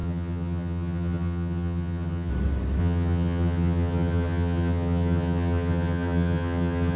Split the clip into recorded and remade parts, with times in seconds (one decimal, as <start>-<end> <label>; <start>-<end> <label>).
0.0-2.3 remade; 2.3-2.8 recorded; 2.8-7.0 remade